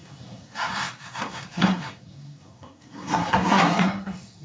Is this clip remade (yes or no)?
yes